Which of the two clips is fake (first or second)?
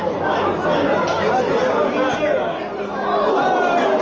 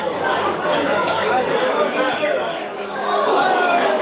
second